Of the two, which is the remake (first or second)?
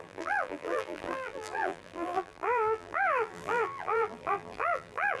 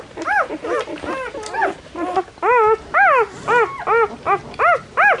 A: first